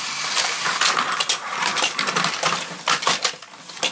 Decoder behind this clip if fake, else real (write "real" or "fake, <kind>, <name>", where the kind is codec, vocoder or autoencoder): real